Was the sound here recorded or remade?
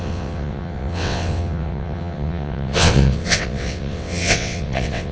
remade